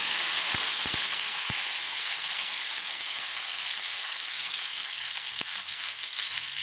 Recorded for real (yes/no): no